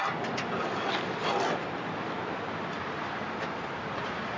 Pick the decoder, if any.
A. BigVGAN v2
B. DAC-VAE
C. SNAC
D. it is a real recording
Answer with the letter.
A